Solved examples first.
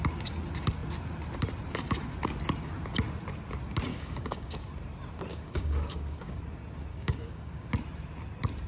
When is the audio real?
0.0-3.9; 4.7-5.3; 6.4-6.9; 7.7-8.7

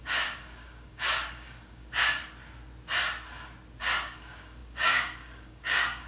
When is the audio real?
2.2-3.8

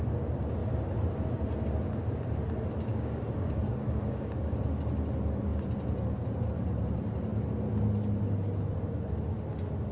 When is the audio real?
0.0-2.9; 4.6-9.9